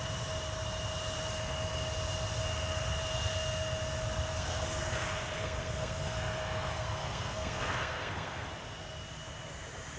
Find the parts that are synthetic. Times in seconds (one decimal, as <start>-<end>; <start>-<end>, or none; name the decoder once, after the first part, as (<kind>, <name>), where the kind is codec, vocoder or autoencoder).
4.3-8.5 (codec, SNAC)